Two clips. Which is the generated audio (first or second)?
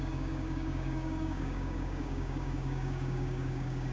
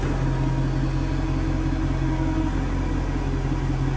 first